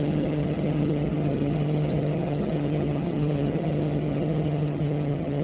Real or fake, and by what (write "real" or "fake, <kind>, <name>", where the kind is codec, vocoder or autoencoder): fake, vocoder, HiFi-GAN